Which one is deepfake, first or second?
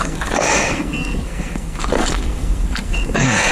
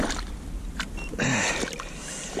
first